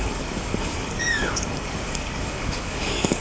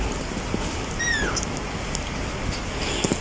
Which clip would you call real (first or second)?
second